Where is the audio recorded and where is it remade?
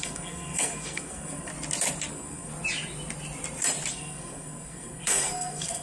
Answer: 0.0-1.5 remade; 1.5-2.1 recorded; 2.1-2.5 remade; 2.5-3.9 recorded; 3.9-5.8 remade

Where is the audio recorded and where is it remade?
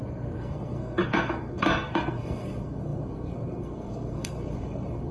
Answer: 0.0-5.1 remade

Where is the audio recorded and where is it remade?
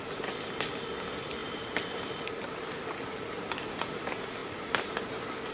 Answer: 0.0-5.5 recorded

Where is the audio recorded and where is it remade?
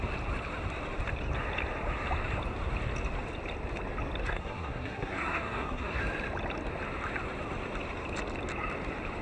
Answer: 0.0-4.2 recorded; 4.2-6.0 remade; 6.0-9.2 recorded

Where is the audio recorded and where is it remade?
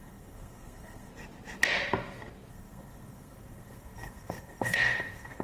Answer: 0.0-1.1 remade; 1.1-2.5 recorded; 2.5-5.4 remade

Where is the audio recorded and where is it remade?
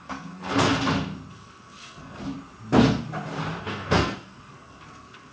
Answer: 0.0-0.7 remade; 0.7-1.3 recorded; 1.3-2.2 remade; 2.2-3.6 recorded; 3.6-5.3 remade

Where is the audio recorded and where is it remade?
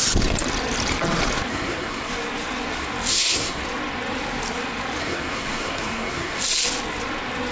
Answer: 0.0-1.5 recorded; 1.5-2.1 remade; 2.1-3.1 recorded; 3.1-3.6 remade; 3.6-5.0 recorded; 5.0-6.4 remade; 6.4-7.5 recorded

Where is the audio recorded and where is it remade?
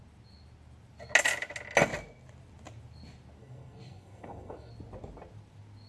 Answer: 0.0-3.4 recorded; 3.4-4.7 remade; 4.7-5.9 recorded